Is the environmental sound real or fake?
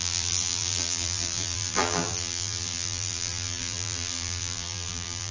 fake